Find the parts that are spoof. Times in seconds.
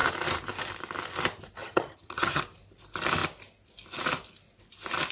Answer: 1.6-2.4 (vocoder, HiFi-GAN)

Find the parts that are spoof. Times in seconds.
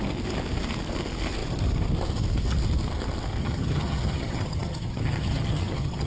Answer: 3.4-6.1 (vocoder, HiFi-GAN)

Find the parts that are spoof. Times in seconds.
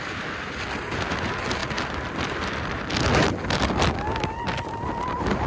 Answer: none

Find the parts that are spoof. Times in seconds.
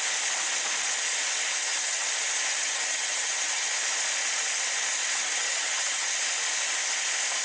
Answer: 1.6-2.1 (vocoder, HiFi-GAN); 2.5-3.7; 5.0-6.2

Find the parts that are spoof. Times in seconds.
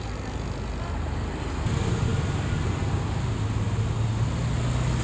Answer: none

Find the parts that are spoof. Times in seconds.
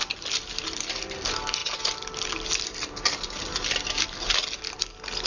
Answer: none